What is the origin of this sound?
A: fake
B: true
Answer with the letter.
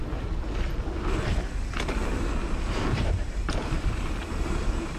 B